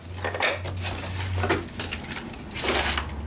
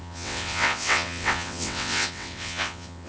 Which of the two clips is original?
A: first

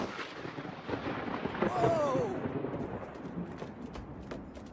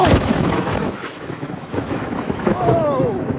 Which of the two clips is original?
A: first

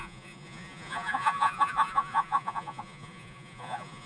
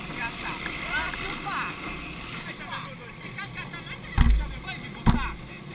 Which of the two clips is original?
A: second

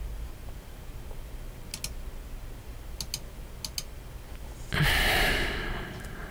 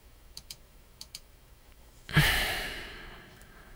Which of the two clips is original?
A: first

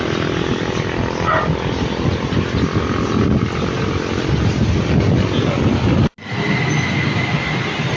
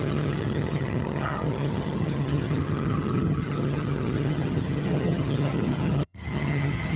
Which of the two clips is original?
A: first